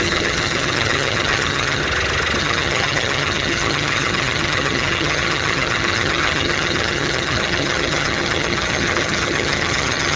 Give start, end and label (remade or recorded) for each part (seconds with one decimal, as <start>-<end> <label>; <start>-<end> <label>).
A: 0.0-1.8 remade; 1.8-2.4 recorded; 2.4-10.2 remade